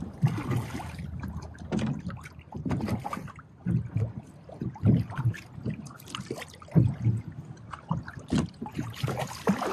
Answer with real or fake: real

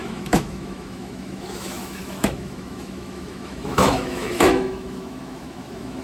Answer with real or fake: fake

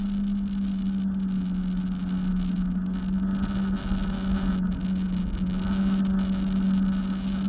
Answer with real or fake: real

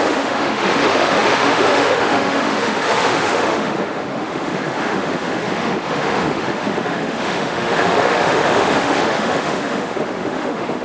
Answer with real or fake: fake